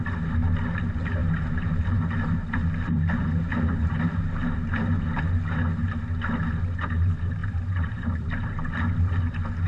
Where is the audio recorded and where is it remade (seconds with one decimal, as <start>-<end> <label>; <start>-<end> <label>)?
0.0-1.2 recorded; 1.2-5.2 remade; 5.2-7.4 recorded; 7.4-8.9 remade; 8.9-9.7 recorded